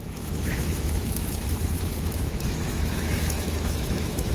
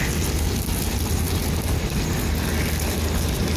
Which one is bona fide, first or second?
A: second